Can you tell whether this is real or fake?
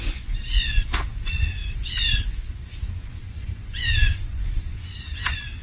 fake